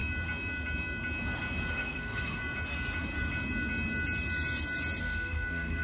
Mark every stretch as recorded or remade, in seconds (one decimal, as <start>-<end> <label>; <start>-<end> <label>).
0.0-1.7 recorded; 1.7-2.4 remade; 2.4-5.0 recorded; 5.0-5.8 remade